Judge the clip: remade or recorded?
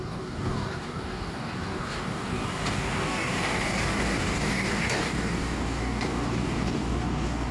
remade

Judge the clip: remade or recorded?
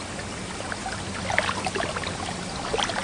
recorded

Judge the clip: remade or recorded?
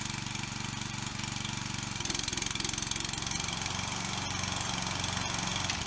recorded